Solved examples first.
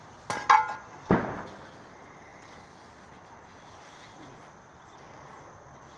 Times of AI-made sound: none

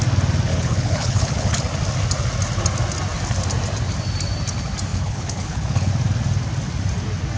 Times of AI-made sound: 0.5-1.6 (codec, HILCodec); 4.9-5.9

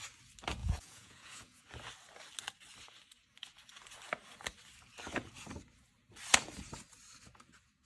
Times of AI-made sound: 0.6-1.6 (vocoder, Vocos)

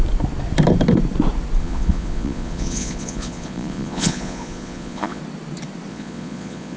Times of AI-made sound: 1.6-5.2 (vocoder, Vocos); 5.9-6.8